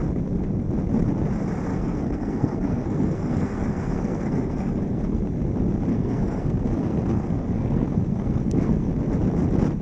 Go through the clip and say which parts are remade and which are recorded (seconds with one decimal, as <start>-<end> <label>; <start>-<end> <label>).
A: 0.0-1.7 recorded; 1.7-5.2 remade; 5.2-5.9 recorded; 5.9-8.9 remade; 8.9-9.8 recorded